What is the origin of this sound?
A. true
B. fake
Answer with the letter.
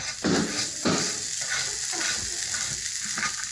A